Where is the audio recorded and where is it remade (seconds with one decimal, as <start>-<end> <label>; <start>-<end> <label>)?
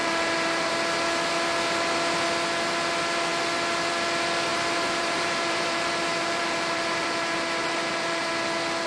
0.0-0.7 remade; 0.7-4.5 recorded; 4.5-8.3 remade; 8.3-8.9 recorded